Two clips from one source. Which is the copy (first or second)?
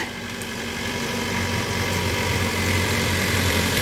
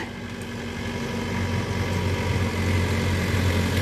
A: first